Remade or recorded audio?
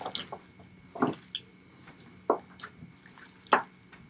recorded